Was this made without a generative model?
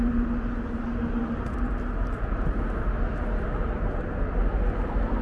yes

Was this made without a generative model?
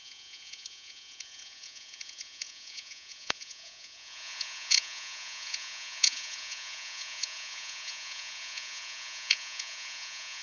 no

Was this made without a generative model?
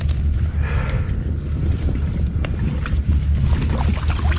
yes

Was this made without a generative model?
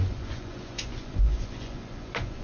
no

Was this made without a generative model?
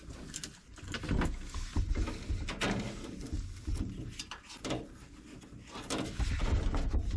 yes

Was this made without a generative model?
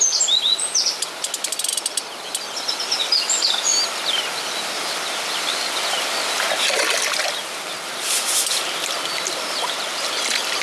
yes